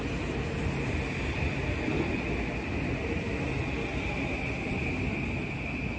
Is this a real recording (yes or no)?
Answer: yes